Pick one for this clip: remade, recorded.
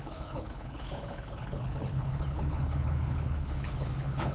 remade